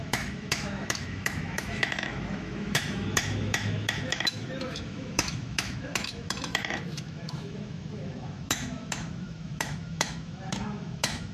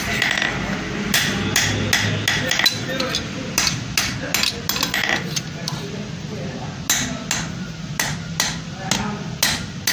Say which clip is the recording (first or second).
second